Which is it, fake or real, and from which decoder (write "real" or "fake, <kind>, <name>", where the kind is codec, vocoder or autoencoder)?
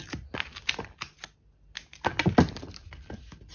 real